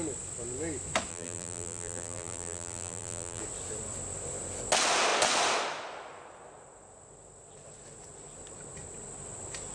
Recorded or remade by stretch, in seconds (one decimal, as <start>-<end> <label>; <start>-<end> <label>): 0.0-1.1 recorded; 1.1-3.4 remade; 3.4-9.7 recorded